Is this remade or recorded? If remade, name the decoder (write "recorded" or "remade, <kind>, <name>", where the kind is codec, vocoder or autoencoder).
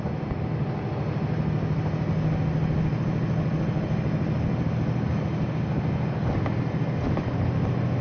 recorded